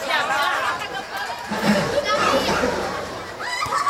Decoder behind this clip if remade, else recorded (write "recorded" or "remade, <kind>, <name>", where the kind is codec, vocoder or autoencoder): remade, vocoder, BigVGAN v2